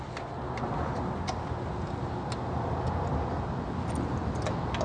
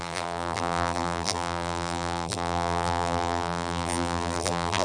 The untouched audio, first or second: first